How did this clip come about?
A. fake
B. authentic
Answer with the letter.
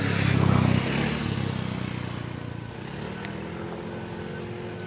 B